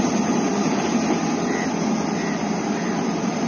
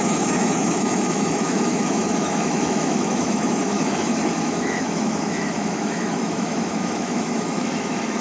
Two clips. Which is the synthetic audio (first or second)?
second